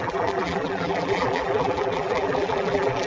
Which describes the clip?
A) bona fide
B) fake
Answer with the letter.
B